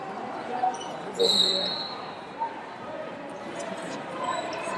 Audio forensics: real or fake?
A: fake